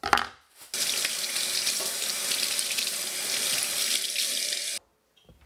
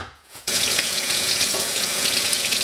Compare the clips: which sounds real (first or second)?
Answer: first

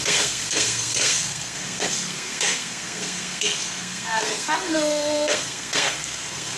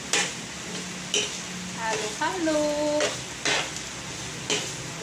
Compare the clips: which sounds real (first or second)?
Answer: second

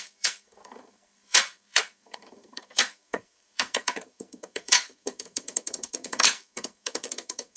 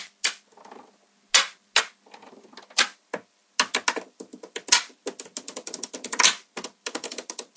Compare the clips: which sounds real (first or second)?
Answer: second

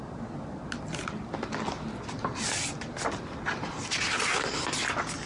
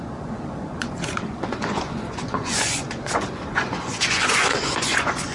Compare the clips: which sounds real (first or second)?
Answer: first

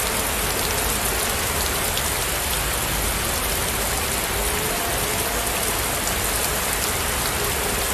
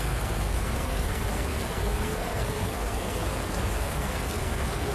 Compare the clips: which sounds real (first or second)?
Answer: first